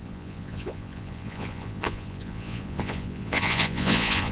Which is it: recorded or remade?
remade